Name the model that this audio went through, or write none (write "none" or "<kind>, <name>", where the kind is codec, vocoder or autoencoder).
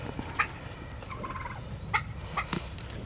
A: none